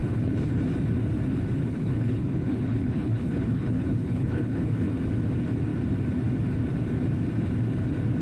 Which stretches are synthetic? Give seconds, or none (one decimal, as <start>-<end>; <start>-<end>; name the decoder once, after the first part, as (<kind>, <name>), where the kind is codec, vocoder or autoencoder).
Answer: 0.0-0.6 (codec, HILCodec); 1.6-4.9